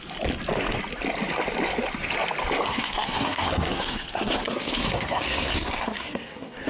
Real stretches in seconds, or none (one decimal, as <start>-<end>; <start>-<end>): 0.0-2.7